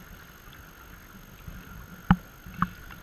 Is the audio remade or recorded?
recorded